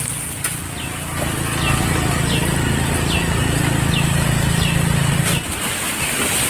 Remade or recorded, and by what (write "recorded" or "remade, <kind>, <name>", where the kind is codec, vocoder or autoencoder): recorded